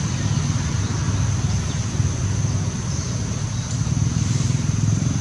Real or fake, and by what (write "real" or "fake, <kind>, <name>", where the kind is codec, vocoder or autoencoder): real